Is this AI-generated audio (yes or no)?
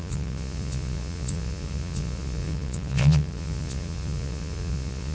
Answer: yes